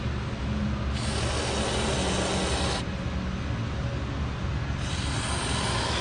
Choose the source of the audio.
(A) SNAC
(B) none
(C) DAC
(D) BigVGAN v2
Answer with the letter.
B